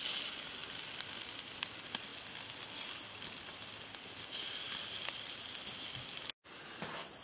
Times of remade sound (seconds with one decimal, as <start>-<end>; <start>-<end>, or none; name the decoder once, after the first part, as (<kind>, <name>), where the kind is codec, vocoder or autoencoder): none